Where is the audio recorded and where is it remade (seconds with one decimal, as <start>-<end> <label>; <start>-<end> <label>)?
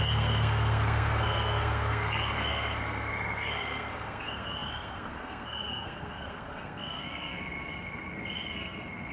0.0-9.1 remade